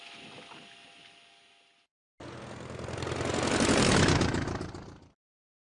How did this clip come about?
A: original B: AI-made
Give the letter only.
A